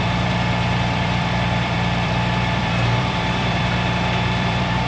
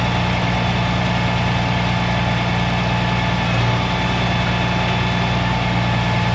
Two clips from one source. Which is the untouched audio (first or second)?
second